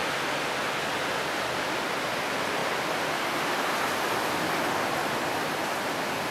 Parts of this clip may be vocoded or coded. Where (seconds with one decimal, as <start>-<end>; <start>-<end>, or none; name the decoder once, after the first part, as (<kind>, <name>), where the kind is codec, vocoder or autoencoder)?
none